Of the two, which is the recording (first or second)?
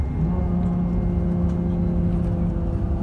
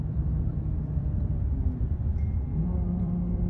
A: first